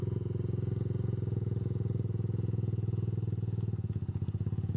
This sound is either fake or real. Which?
fake